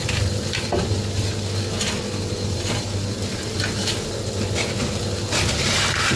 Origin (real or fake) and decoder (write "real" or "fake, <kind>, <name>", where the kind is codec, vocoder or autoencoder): real